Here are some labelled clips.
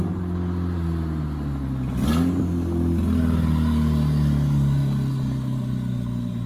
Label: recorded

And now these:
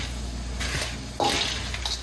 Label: recorded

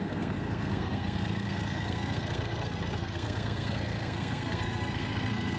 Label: remade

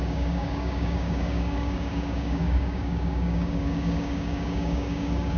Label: remade